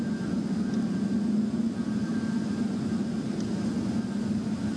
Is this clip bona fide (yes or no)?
yes